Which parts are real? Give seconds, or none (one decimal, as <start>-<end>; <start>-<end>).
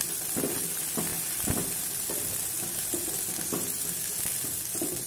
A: 0.0-5.1